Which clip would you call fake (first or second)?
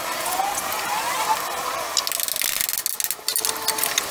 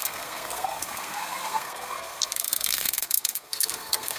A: second